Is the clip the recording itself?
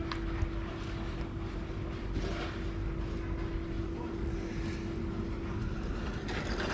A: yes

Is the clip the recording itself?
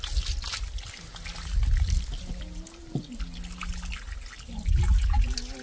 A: yes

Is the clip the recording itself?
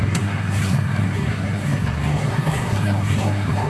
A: no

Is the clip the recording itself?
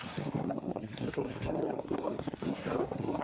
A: no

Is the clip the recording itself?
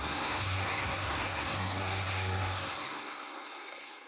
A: no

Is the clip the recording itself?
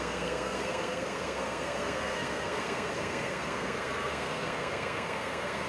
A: no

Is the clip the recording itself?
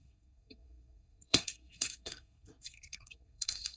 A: no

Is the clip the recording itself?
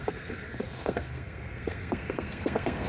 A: no